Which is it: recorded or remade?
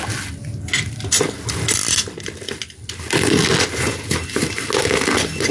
recorded